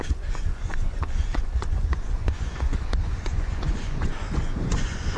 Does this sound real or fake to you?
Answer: fake